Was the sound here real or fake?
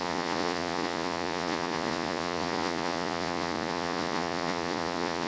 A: fake